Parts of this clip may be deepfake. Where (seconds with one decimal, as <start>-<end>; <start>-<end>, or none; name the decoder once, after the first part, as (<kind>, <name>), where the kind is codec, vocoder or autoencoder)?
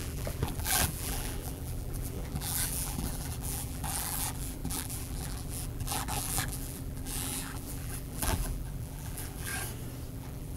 0.0-9.5 (vocoder, BigVGAN v2); 10.1-10.6